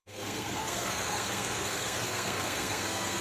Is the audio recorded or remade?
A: remade